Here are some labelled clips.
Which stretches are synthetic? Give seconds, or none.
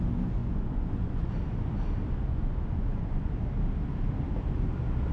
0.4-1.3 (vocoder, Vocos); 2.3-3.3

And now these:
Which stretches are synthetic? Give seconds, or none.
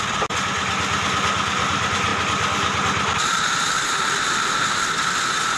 none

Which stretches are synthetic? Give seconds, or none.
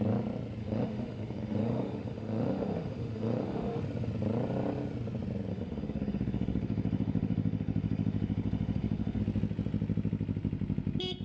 0.6-3.8 (autoencoder, DAC-VAE); 5.5-9.2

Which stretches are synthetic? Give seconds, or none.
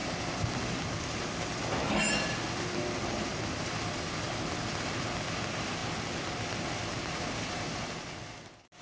none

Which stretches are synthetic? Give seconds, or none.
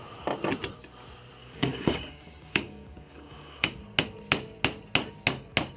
1.4-3.8 (codec, DAC)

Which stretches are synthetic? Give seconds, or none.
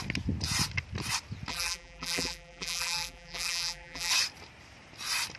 1.5-4.1 (vocoder, BigVGAN v2)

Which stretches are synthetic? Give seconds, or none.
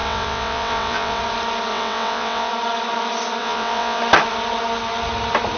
0.0-1.2 (vocoder, WaveNeXt); 1.7-2.5; 3.4-4.0